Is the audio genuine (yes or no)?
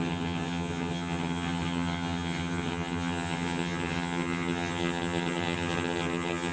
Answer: no